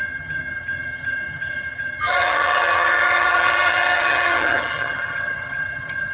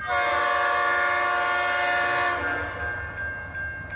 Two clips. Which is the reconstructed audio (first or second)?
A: first